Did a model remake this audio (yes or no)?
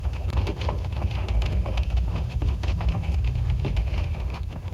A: yes